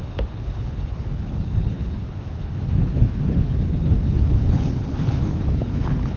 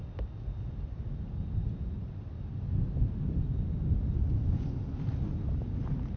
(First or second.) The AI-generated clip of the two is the first